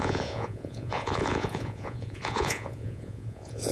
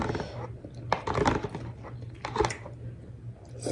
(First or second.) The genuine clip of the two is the second